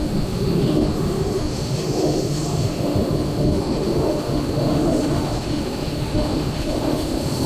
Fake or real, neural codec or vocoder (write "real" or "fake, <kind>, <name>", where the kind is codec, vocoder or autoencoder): fake, autoencoder, DAC-VAE